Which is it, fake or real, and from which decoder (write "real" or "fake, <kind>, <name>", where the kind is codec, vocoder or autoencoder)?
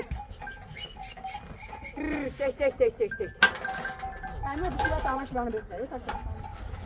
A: real